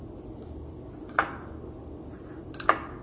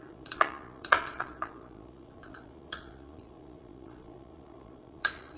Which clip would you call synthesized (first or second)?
second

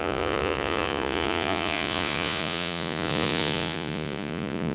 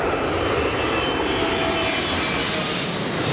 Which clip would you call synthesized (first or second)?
first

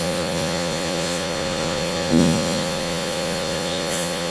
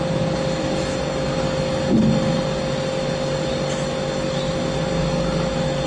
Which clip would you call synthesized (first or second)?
first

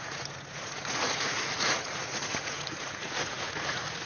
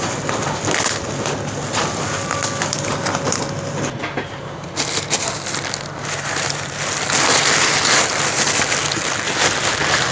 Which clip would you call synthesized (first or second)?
first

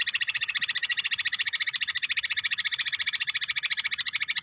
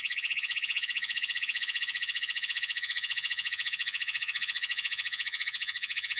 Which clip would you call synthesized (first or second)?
second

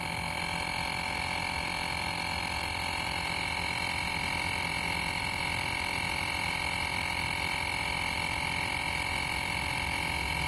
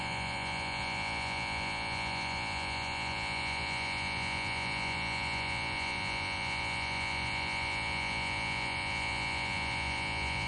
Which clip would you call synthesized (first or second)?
second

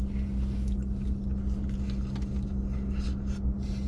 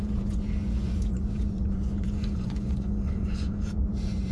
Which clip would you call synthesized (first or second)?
second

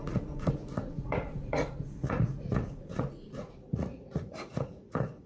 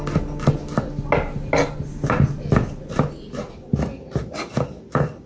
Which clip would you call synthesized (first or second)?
first